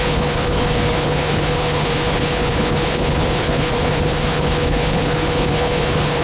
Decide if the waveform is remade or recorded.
remade